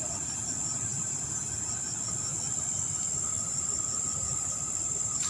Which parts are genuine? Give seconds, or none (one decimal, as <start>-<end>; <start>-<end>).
0.0-5.3